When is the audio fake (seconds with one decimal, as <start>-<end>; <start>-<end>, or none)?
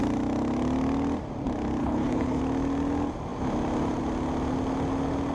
1.8-2.4